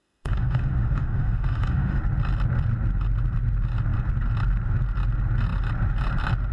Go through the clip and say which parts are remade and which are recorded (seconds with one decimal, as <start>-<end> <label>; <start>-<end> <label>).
0.0-2.0 remade; 2.0-6.5 recorded